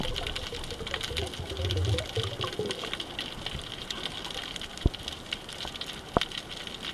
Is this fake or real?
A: real